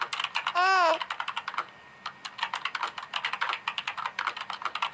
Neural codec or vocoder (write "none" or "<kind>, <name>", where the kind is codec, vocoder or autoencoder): none